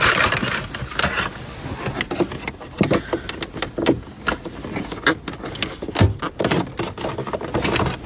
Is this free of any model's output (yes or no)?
yes